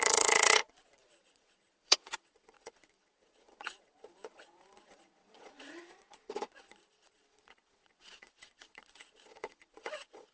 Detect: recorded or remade remade